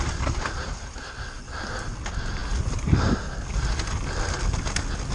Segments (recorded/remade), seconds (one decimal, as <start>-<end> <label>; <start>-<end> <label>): 0.0-5.1 recorded